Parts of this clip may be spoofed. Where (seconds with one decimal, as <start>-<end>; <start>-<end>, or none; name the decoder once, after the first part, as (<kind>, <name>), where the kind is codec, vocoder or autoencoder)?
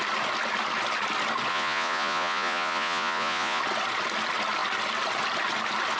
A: 1.5-3.6 (vocoder, Vocos)